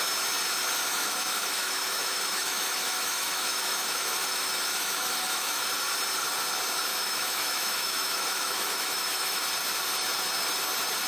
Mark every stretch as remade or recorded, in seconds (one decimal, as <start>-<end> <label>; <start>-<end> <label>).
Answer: 0.0-0.9 recorded; 0.9-5.6 remade; 5.6-6.9 recorded; 6.9-9.4 remade; 9.4-11.1 recorded